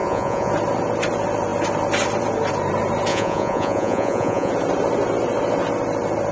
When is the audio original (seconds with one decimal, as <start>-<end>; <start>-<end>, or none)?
0.5-3.1; 4.5-6.3